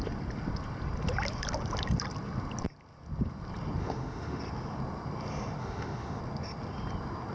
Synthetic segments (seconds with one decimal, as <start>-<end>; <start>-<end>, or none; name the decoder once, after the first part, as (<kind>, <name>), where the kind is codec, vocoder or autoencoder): 3.8-4.4 (autoencoder, DAC-VAE); 5.6-6.2